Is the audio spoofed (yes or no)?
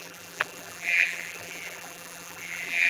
yes